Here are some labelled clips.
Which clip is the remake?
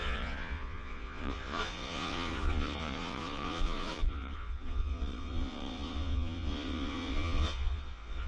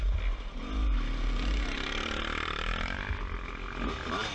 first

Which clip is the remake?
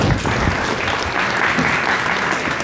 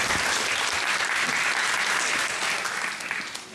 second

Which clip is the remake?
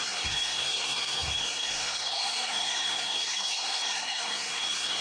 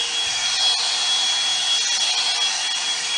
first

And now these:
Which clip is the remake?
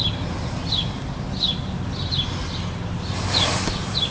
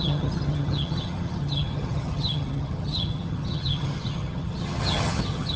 second